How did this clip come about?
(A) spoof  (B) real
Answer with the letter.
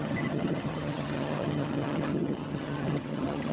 A